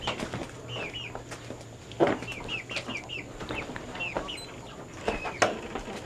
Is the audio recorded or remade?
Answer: recorded